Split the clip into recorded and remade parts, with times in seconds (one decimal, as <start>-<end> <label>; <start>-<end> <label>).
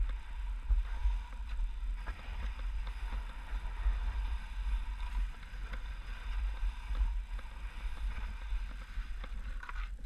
0.0-10.1 recorded